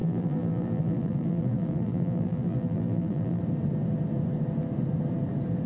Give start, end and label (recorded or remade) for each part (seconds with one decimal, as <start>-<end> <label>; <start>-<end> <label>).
0.0-3.4 remade; 3.4-5.7 recorded